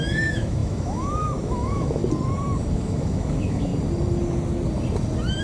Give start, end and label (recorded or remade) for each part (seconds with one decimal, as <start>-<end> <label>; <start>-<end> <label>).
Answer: 0.0-2.0 remade; 2.0-2.7 recorded; 2.7-3.7 remade; 3.7-5.4 recorded

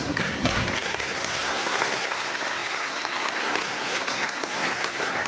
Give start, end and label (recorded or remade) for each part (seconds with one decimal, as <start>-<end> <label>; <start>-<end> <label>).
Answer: 0.0-5.3 remade

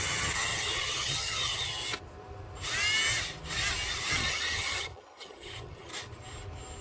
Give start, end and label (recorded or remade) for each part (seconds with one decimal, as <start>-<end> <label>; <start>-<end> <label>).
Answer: 0.0-1.8 remade; 1.8-4.1 recorded; 4.1-5.9 remade; 5.9-6.8 recorded

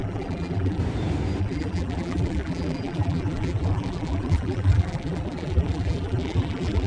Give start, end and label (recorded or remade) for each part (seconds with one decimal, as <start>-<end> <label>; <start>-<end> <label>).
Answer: 0.0-0.8 remade; 0.8-1.4 recorded; 1.4-6.9 remade